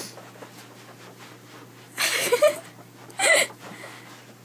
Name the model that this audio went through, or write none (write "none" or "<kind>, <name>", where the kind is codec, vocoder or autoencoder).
none